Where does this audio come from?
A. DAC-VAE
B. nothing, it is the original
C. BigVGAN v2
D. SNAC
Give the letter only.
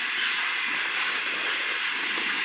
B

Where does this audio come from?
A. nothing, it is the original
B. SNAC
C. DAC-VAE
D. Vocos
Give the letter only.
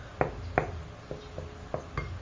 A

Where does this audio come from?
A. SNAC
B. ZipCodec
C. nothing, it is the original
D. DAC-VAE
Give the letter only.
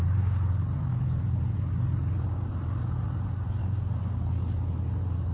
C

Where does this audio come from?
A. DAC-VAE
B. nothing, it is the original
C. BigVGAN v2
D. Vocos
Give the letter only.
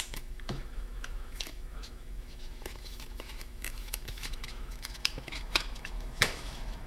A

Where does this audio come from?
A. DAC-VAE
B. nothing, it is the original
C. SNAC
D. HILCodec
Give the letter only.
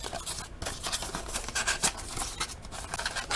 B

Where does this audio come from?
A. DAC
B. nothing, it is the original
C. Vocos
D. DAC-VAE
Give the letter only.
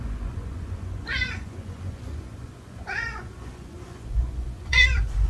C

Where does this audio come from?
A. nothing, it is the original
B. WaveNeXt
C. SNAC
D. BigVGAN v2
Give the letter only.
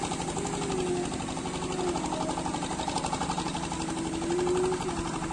A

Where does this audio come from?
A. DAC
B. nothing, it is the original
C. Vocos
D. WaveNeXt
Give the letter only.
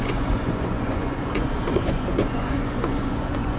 C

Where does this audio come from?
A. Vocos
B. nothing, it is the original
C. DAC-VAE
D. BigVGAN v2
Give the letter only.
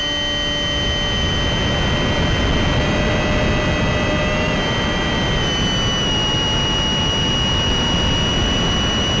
B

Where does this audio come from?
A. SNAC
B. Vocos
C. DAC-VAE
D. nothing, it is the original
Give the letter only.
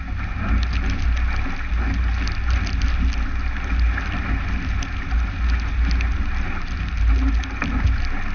D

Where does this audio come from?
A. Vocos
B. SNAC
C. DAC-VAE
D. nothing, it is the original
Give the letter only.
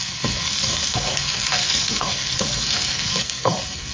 B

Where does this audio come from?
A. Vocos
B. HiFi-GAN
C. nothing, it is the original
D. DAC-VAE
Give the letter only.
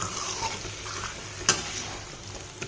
C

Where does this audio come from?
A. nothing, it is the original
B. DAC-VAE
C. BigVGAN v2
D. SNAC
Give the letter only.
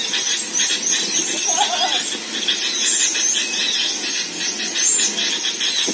A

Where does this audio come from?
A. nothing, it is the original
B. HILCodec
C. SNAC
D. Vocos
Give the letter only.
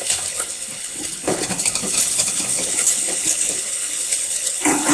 B